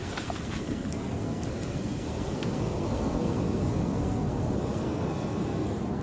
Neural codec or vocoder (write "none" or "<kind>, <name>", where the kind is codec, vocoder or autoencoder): codec, SNAC